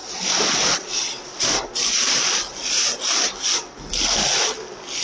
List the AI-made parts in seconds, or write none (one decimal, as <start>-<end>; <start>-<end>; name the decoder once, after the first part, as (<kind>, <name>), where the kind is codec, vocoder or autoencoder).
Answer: none